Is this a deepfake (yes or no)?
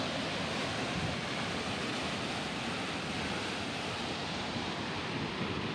no